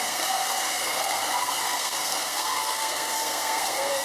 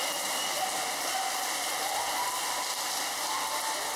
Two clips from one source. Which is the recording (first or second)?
second